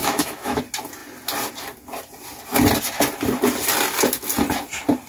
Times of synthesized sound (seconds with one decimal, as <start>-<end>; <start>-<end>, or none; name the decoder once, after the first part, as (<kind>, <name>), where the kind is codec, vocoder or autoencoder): 0.0-0.6 (autoencoder, DAC-VAE)